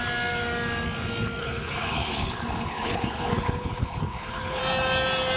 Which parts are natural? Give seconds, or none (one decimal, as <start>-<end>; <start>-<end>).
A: 0.0-1.4; 4.6-5.4